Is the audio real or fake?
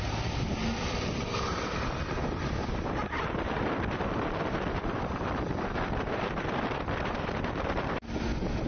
fake